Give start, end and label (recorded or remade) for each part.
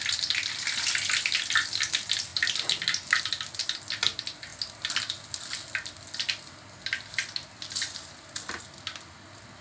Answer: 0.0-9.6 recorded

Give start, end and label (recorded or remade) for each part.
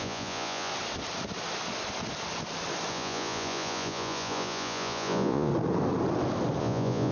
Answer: 0.0-0.7 remade; 0.7-2.9 recorded; 2.9-5.5 remade; 5.5-6.6 recorded; 6.6-7.1 remade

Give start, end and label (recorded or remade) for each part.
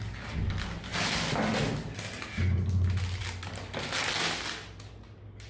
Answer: 0.0-5.5 recorded